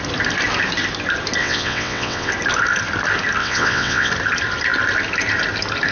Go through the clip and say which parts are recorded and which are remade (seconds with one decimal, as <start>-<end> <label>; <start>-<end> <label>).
0.0-1.4 recorded; 1.4-2.3 remade; 2.3-3.4 recorded; 3.4-4.1 remade; 4.1-5.9 recorded